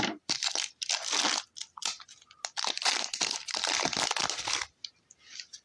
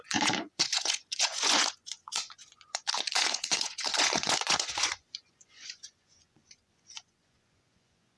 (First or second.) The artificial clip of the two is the second